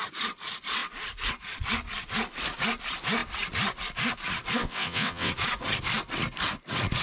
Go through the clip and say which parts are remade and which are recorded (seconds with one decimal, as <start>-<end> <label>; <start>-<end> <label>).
0.0-4.6 recorded; 4.6-5.3 remade; 5.3-7.0 recorded

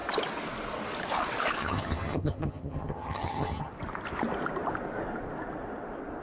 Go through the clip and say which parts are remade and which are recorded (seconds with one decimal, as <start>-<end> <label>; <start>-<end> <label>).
0.0-1.6 recorded; 1.6-3.7 remade; 3.7-6.2 recorded

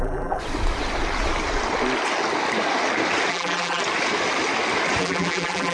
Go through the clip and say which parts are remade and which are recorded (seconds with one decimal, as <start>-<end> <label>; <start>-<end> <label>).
0.0-0.4 remade; 0.4-3.3 recorded; 3.3-3.8 remade; 3.8-5.0 recorded; 5.0-5.7 remade

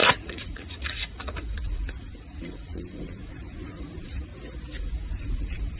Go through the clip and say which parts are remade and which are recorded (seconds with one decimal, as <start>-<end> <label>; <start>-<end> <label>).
0.0-4.3 remade; 4.3-4.8 recorded; 4.8-5.8 remade

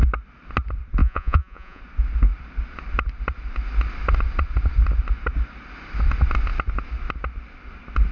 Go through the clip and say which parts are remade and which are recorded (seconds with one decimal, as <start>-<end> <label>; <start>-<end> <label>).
0.0-1.0 recorded; 1.0-1.8 remade; 1.8-8.1 recorded

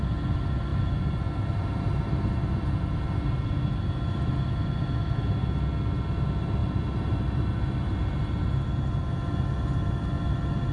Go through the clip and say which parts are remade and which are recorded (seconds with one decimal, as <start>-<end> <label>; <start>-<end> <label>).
0.0-0.7 recorded; 0.7-3.1 remade; 3.1-6.6 recorded; 6.6-8.2 remade; 8.2-10.7 recorded